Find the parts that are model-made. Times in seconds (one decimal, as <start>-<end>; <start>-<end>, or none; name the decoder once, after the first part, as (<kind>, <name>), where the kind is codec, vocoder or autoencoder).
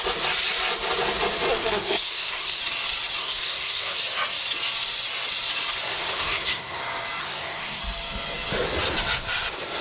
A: 1.5-2.6 (codec, SNAC); 3.2-4.0; 5.9-6.8; 7.2-7.8